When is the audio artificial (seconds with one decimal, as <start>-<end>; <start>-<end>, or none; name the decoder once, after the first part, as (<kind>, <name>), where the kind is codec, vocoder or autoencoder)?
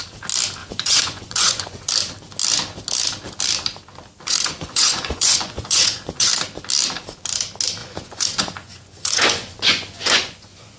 0.6-1.9 (vocoder, Vocos); 4.3-6.3; 7.8-10.8